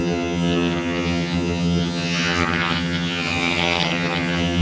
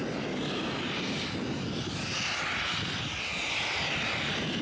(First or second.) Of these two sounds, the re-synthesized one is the first